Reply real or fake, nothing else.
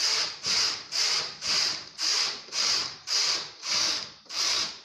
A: fake